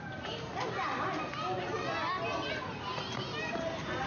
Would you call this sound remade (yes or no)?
no